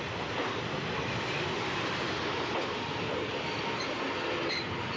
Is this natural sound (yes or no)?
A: yes